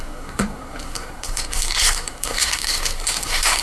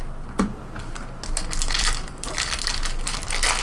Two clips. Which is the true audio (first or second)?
second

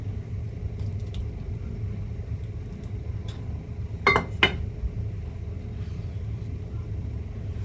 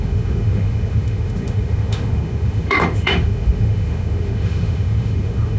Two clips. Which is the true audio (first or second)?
first